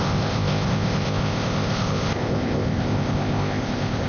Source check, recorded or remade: remade